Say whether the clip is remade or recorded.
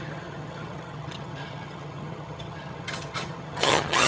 remade